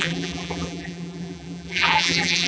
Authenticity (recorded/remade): remade